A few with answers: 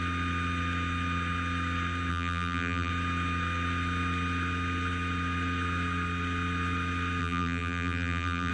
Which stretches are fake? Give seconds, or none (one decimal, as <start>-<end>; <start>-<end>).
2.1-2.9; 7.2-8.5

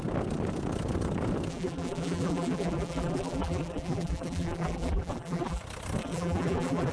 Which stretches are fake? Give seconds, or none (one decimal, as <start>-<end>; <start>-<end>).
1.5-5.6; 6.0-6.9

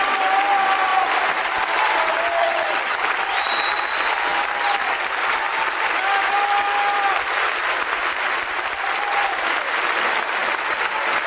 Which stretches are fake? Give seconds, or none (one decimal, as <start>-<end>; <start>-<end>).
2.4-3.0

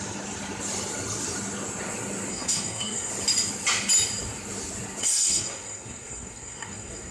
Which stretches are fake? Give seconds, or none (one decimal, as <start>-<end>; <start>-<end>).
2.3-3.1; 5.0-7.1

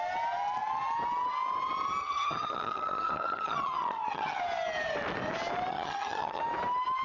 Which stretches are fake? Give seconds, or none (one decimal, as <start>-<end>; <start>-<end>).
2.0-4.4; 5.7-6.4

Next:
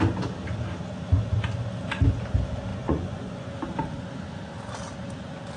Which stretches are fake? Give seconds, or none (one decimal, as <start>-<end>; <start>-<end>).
2.7-3.5